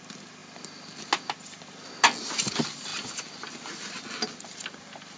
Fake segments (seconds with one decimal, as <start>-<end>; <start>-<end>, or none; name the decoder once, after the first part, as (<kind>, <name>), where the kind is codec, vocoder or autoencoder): none